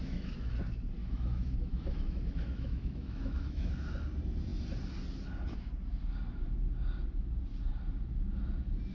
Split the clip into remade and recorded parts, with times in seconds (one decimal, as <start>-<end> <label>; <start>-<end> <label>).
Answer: 0.0-0.5 remade; 0.5-1.0 recorded; 1.0-3.7 remade; 3.7-8.9 recorded